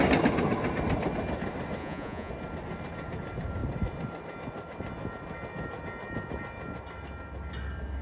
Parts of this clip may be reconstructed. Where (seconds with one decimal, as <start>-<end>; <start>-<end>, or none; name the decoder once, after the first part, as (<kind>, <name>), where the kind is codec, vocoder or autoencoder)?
1.8-2.3 (vocoder, Vocos)